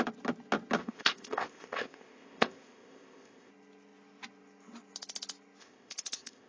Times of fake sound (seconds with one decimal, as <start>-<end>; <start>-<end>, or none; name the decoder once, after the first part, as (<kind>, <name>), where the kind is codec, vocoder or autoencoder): 0.8-3.5 (codec, ZipCodec); 5.6-6.5